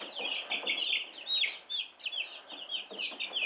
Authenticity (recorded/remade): recorded